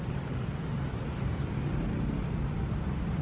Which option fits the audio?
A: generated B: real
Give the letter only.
B